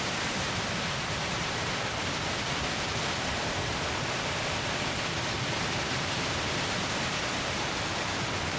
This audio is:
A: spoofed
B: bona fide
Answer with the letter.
B